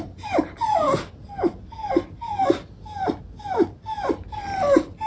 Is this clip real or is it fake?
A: real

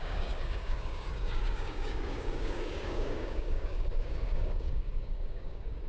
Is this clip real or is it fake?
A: fake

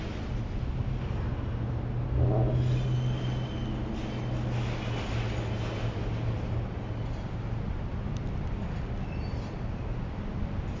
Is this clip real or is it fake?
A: real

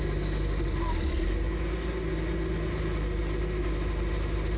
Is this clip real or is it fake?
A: real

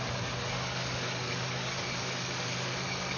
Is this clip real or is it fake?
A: fake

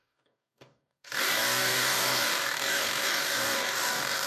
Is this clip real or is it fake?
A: fake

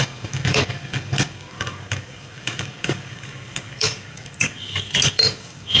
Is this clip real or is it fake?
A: fake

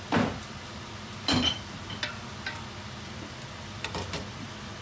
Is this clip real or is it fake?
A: real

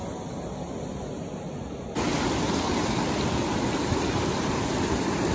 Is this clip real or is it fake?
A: real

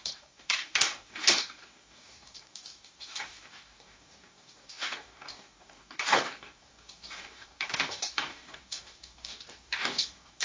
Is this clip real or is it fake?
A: fake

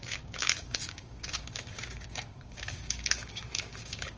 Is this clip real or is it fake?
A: fake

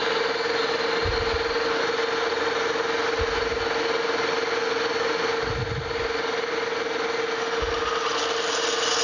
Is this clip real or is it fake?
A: real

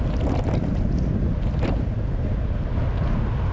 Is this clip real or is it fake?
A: real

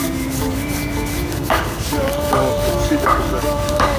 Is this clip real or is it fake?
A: fake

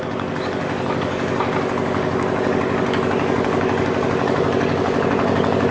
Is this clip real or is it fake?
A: fake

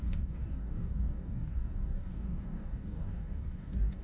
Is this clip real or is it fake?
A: fake